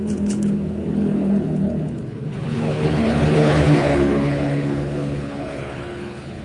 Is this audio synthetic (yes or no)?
yes